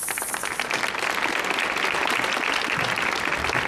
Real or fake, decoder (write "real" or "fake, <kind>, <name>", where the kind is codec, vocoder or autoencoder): real